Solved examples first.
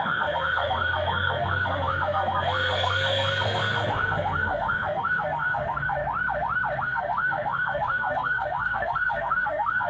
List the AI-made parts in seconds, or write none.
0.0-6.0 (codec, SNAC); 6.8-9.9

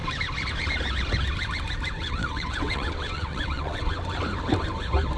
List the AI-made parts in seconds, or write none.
2.0-3.9 (vocoder, WaveNeXt)